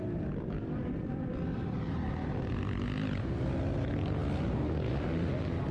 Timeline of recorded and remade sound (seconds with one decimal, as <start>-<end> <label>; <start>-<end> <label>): 0.0-1.5 recorded; 1.5-2.5 remade; 2.5-5.7 recorded